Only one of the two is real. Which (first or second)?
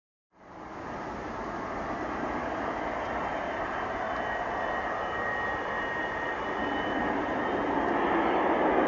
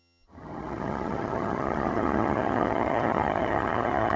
first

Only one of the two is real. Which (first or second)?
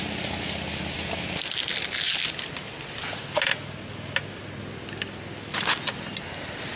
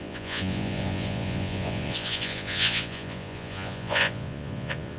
first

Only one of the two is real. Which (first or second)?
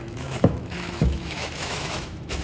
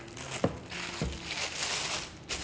second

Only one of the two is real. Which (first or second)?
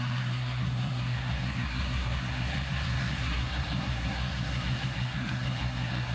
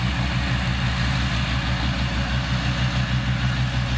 second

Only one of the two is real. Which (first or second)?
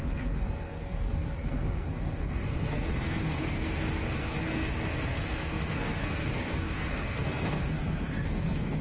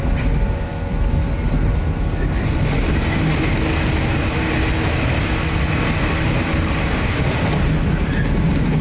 second